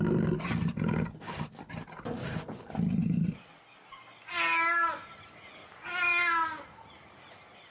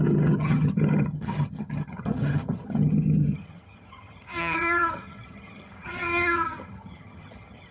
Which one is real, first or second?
first